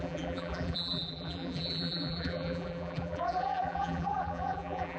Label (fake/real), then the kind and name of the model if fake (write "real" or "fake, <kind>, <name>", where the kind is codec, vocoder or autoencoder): fake, vocoder, BigVGAN v2